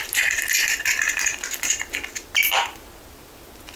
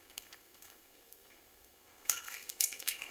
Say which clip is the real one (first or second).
first